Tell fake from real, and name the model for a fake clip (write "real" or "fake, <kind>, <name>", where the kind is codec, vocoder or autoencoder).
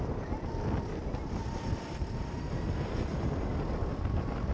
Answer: real